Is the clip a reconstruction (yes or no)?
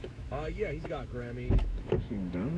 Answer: yes